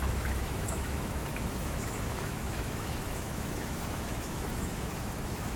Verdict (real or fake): fake